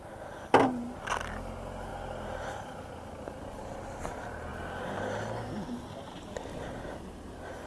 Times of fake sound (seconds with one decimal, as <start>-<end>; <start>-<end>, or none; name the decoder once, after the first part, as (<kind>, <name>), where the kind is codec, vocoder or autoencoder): none